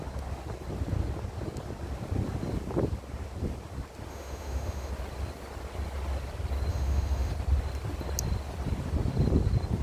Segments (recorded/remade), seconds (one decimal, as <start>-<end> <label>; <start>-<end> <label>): 0.0-4.1 recorded; 4.1-4.9 remade; 4.9-6.7 recorded; 6.7-7.3 remade; 7.3-9.8 recorded

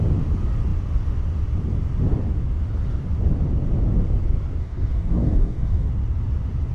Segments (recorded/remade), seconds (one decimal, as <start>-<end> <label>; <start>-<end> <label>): 0.0-4.6 recorded; 4.6-5.9 remade; 5.9-6.7 recorded

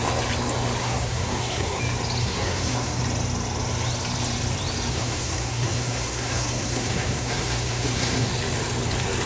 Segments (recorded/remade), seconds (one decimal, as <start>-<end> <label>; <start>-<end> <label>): 0.0-0.8 recorded; 0.8-1.8 remade; 1.8-2.2 recorded; 2.2-3.0 remade; 3.0-4.9 recorded; 4.9-8.3 remade; 8.3-9.3 recorded

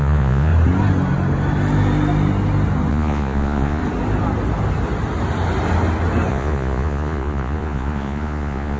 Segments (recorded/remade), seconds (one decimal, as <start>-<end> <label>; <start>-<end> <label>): 0.0-0.5 remade; 0.5-2.9 recorded; 2.9-3.8 remade; 3.8-6.3 recorded; 6.3-8.8 remade